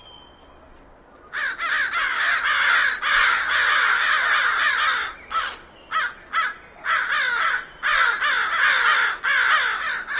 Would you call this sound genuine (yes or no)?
yes